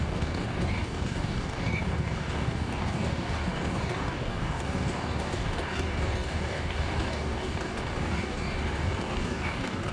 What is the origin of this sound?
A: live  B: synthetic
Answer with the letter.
B